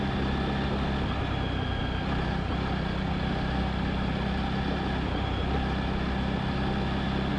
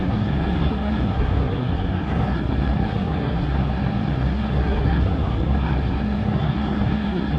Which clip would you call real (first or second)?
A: first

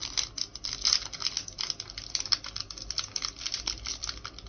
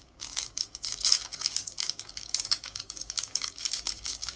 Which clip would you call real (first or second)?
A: first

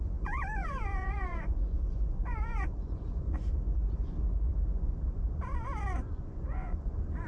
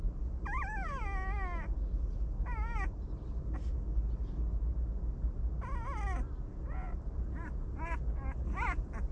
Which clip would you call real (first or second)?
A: second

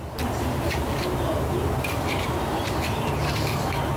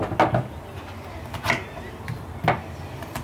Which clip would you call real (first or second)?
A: second